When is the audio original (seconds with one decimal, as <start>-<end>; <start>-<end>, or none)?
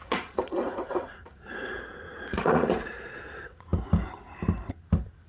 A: 3.2-5.3